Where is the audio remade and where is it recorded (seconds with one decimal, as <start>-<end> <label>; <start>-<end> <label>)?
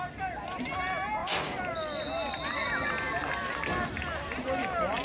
0.0-5.0 recorded